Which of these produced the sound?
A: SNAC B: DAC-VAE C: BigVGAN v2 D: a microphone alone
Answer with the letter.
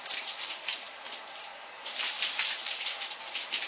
C